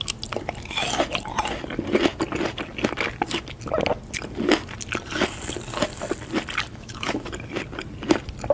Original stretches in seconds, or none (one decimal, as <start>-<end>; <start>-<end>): 0.0-6.7; 7.3-8.5